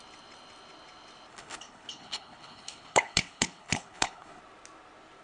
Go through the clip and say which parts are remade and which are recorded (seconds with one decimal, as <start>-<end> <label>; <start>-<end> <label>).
0.0-1.3 recorded; 1.3-4.4 remade; 4.4-5.2 recorded